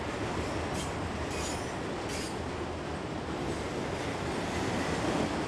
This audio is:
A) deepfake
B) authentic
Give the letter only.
B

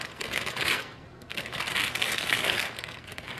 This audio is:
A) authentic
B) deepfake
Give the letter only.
B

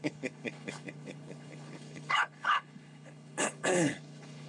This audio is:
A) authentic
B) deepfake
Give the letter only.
B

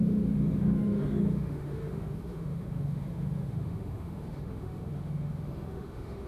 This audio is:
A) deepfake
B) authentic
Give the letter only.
A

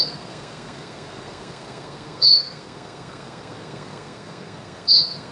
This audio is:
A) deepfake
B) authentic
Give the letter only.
A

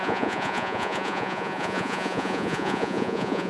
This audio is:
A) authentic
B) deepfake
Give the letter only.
B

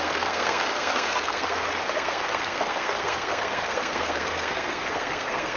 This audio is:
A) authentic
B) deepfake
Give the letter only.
B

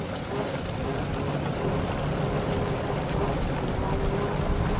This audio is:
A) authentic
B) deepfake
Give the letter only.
A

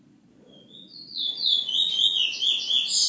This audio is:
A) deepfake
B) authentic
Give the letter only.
A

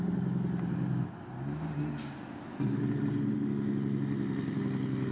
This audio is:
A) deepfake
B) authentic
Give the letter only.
B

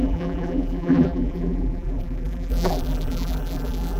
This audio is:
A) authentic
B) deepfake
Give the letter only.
B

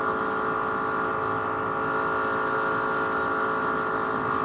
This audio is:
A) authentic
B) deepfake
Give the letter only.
A